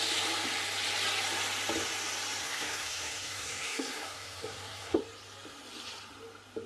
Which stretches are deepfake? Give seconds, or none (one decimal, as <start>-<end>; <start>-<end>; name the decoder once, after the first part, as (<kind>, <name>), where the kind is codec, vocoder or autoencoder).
2.4-5.0 (codec, SNAC)